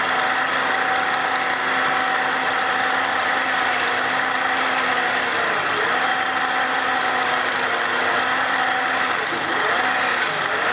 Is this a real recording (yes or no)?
yes